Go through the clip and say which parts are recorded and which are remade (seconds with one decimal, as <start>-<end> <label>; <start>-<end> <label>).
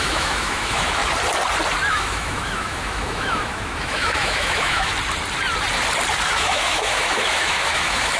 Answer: 0.0-1.0 remade; 1.0-1.9 recorded; 1.9-4.9 remade; 4.9-6.3 recorded; 6.3-8.2 remade